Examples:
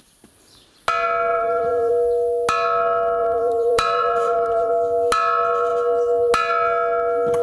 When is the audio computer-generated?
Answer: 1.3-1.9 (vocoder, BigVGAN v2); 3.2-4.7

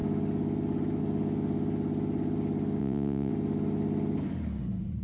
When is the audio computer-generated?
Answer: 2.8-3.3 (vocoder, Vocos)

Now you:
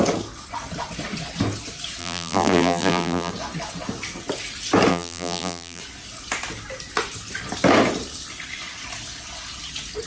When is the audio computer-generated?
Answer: 2.0-3.3 (vocoder, BigVGAN v2); 4.9-5.8